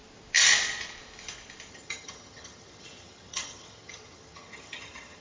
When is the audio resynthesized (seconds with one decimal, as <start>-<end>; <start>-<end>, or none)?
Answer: 1.7-5.2